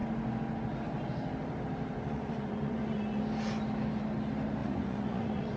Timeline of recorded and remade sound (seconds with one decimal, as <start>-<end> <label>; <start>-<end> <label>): 0.0-1.9 recorded; 1.9-3.2 remade; 3.2-4.6 recorded; 4.6-5.6 remade